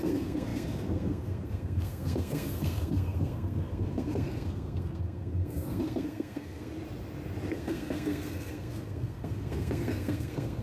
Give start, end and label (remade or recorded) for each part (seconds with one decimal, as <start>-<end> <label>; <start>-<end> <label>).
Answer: 0.0-6.7 remade; 6.7-7.5 recorded; 7.5-10.6 remade